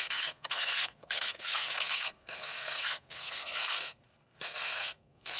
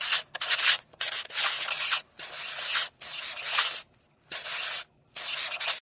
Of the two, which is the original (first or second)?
second